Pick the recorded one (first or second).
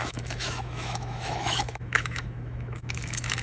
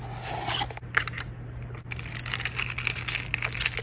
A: second